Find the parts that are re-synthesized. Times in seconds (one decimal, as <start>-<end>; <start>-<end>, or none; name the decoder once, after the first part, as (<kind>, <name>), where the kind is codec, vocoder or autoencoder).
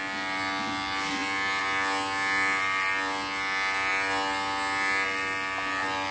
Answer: none